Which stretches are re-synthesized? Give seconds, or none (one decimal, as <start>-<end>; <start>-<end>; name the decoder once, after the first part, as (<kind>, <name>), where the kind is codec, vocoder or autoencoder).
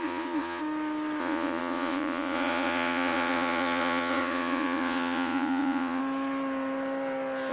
0.0-0.6 (vocoder, Vocos); 1.2-6.0